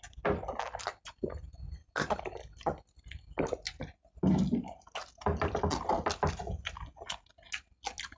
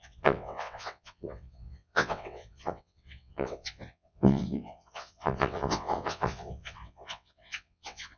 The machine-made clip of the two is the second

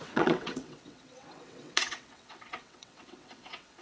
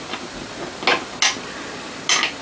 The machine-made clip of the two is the first